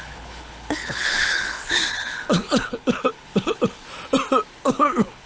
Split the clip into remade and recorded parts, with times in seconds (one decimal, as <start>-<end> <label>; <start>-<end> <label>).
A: 0.0-3.8 remade; 3.8-4.6 recorded; 4.6-5.3 remade